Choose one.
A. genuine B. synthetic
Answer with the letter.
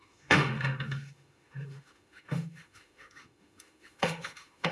B